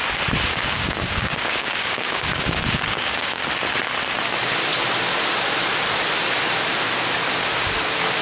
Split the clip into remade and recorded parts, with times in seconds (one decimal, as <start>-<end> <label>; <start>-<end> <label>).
0.0-0.5 recorded; 0.5-3.4 remade; 3.4-8.2 recorded